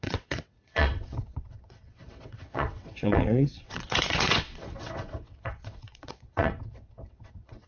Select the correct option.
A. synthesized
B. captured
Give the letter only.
A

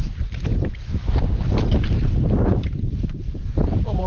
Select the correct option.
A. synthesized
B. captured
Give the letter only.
A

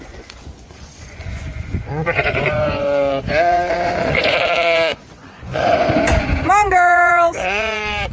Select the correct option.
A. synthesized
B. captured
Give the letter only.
A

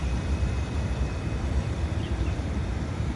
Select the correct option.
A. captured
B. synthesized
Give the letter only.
B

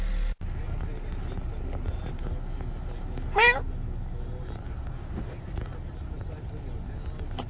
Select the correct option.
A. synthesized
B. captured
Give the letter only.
B